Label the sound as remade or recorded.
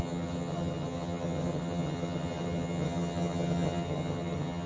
remade